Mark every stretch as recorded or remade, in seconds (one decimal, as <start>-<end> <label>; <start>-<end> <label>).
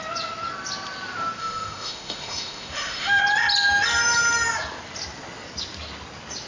0.0-1.4 recorded; 1.4-3.2 remade; 3.2-6.5 recorded